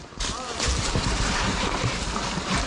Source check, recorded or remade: remade